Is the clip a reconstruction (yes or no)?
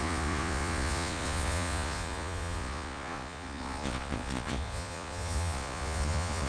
yes